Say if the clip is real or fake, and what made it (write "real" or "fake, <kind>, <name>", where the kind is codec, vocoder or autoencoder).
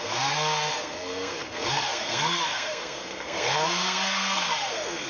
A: fake, codec, SNAC